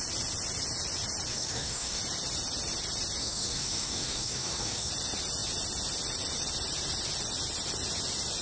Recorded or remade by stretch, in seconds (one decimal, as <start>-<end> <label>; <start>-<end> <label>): 0.0-1.3 recorded; 1.3-2.0 remade; 2.0-3.2 recorded; 3.2-4.9 remade; 4.9-8.4 recorded